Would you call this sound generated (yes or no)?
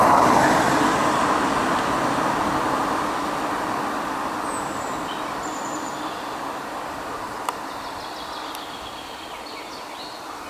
no